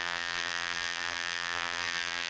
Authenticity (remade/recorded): remade